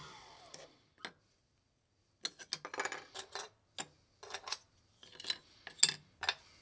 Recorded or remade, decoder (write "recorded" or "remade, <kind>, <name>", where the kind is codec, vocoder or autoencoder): recorded